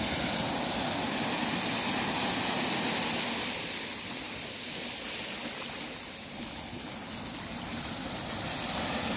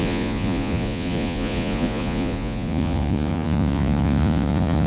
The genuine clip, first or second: first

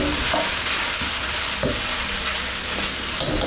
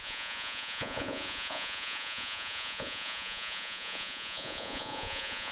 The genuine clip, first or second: first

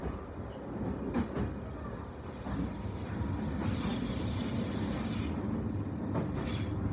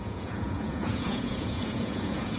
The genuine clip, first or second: first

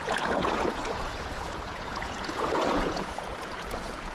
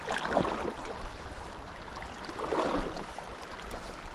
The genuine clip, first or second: second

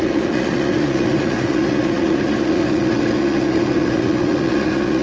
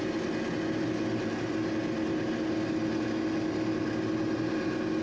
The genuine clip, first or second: second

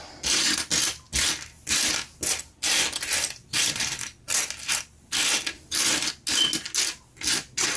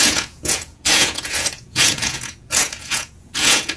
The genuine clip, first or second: first